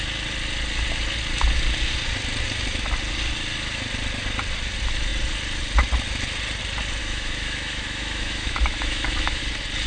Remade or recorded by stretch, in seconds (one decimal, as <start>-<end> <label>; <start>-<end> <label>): 0.0-7.0 recorded; 7.0-9.4 remade; 9.4-9.9 recorded